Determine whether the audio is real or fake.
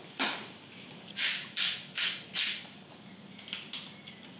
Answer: real